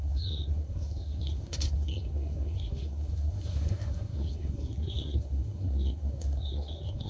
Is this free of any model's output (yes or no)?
no